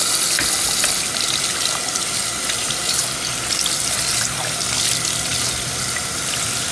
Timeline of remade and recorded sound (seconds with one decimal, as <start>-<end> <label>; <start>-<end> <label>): 0.0-6.7 recorded

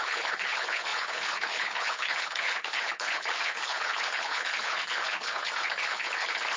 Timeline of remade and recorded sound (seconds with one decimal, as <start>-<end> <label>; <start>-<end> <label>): 0.0-6.6 remade

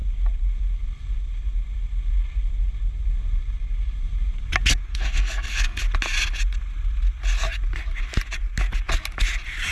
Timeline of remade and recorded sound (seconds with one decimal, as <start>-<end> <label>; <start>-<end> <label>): 0.0-4.9 recorded; 4.9-5.8 remade; 5.8-9.7 recorded

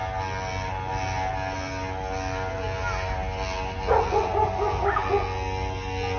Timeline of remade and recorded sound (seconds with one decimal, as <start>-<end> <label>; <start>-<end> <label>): 0.0-6.2 recorded

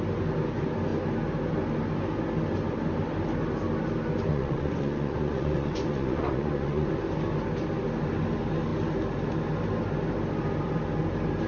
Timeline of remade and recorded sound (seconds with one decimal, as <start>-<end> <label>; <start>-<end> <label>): 0.0-4.3 recorded; 4.3-6.9 remade; 6.9-11.5 recorded

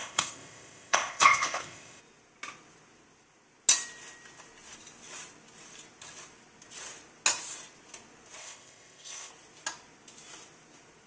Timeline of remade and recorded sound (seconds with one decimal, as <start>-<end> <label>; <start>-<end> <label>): 0.0-2.0 remade; 2.0-8.4 recorded; 8.4-9.3 remade; 9.3-11.1 recorded

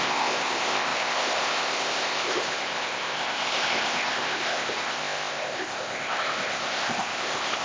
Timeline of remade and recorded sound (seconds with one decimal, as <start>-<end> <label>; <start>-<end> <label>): 0.0-7.6 remade